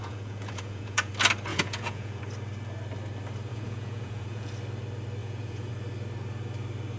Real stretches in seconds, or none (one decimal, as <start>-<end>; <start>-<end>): 1.1-1.5; 2.2-3.5; 4.5-5.2; 5.7-7.0